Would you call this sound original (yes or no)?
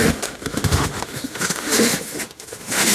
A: no